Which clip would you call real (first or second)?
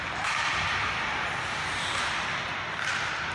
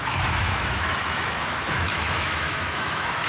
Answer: first